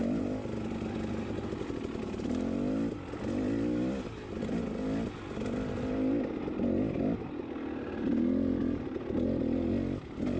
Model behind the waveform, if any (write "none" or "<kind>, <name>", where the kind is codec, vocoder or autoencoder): none